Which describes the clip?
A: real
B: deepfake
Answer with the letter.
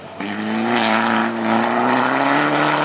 A